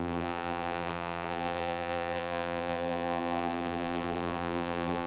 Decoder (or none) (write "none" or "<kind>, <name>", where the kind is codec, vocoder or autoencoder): vocoder, BigVGAN v2